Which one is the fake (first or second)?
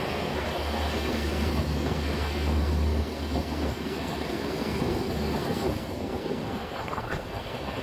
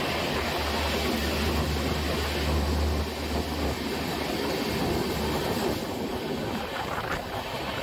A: first